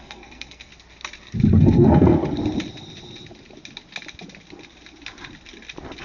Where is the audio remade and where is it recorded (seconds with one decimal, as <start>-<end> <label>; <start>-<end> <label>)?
0.0-0.7 remade; 0.7-1.5 recorded; 1.5-2.2 remade; 2.2-6.0 recorded